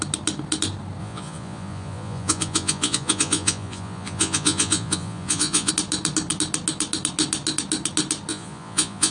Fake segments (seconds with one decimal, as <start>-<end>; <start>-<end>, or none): 1.0-5.7; 8.3-9.1